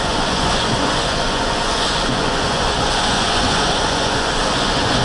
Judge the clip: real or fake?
fake